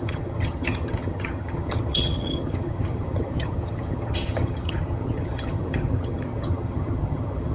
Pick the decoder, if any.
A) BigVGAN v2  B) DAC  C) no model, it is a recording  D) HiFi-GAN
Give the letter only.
D